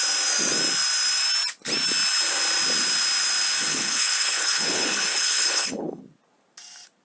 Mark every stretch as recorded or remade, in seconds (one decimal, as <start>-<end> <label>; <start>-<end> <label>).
0.0-3.7 recorded; 3.7-6.0 remade; 6.0-7.0 recorded